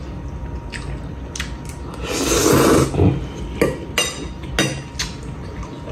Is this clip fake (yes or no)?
no